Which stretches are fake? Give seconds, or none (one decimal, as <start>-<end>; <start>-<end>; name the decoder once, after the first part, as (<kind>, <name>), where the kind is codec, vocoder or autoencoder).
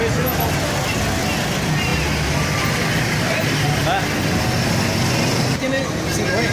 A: none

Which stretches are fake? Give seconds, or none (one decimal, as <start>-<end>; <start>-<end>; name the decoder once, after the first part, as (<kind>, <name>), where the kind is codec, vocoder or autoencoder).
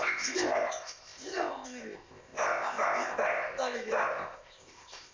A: 0.0-5.1 (codec, ZipCodec)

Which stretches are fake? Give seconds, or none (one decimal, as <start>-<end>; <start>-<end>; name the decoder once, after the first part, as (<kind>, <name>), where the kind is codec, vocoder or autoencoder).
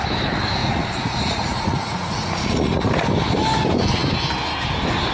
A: 0.6-2.9 (vocoder, Vocos)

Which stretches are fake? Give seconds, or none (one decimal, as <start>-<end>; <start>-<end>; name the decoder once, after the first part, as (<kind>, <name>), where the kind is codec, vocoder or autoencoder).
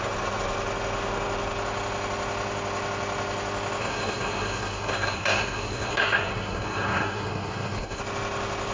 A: 3.8-8.0 (codec, SNAC)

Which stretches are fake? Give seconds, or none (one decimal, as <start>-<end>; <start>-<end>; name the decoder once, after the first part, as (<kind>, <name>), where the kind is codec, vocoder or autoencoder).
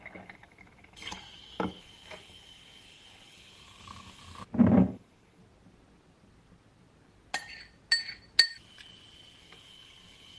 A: 0.0-4.2 (codec, DAC); 4.7-5.4; 9.4-10.4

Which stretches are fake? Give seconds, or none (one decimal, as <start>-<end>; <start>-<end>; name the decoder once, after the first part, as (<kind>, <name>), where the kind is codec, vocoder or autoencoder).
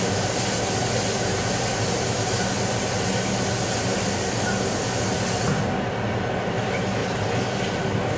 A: none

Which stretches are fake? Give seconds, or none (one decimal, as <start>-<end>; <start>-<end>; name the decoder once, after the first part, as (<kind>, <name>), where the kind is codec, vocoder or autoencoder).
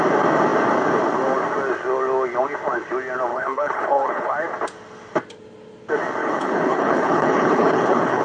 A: 3.3-4.3 (codec, HILCodec); 6.2-8.2